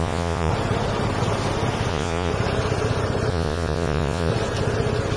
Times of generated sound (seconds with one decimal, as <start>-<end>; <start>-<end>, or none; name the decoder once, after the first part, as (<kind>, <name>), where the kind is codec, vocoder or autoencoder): 0.0-0.5 (vocoder, Vocos); 1.9-2.3; 3.3-4.3